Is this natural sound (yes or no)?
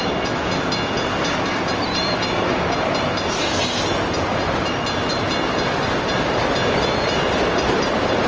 yes